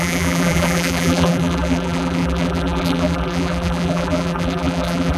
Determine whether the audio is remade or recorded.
remade